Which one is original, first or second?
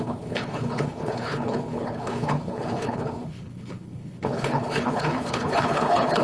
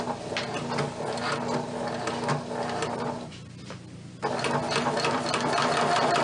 second